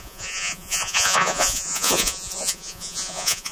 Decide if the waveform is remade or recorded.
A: remade